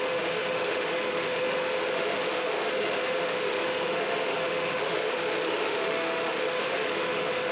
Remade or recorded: remade